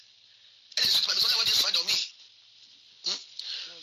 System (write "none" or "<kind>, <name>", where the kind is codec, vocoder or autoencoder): none